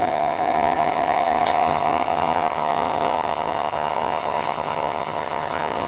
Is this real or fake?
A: fake